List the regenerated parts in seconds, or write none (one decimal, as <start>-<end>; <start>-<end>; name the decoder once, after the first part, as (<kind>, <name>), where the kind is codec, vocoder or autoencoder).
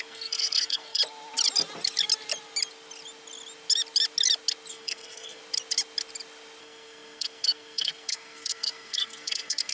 0.0-1.0 (codec, SNAC); 4.7-5.4; 6.6-9.7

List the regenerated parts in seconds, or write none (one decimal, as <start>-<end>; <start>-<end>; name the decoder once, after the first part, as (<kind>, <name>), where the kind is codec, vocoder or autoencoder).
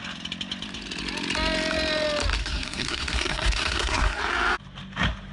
2.4-4.2 (codec, SNAC)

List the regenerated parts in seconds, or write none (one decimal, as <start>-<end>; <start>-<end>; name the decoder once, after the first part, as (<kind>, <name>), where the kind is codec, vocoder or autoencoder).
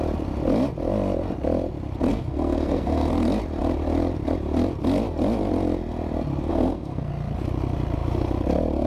2.1-3.1 (codec, SNAC); 6.5-7.1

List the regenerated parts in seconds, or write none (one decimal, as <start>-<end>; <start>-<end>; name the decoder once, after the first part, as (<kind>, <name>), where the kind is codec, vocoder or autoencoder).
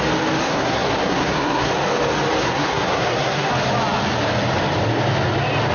0.4-1.7 (codec, SNAC); 2.4-3.5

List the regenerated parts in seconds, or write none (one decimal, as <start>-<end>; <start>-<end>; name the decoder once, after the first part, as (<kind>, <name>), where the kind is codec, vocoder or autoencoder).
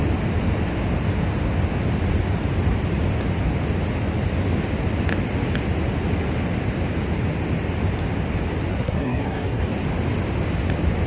8.7-9.6 (codec, SNAC)